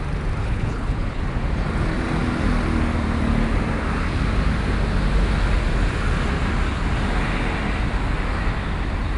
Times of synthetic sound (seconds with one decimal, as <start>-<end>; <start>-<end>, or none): 0.4-1.2